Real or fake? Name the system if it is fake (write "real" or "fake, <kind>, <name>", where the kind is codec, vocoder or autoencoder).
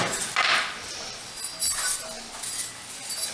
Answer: real